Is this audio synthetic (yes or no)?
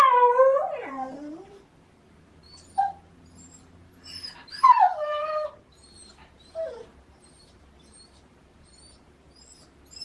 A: yes